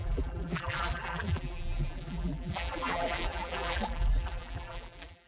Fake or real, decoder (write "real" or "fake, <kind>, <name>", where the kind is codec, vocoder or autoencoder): fake, vocoder, BigVGAN v2